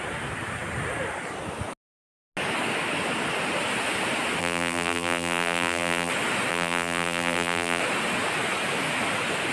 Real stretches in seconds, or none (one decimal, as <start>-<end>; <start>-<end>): 0.0-4.4; 6.1-6.5; 7.8-9.5